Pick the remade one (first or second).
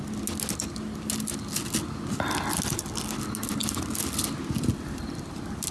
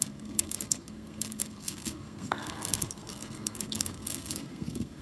second